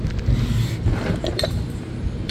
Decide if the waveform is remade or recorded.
recorded